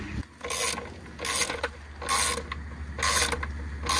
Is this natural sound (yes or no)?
yes